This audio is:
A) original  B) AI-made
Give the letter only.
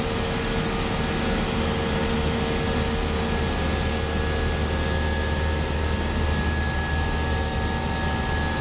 A